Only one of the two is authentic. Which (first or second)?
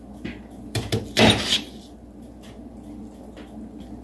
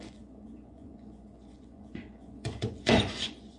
first